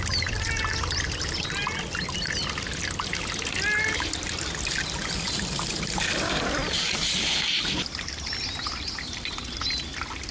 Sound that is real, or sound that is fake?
real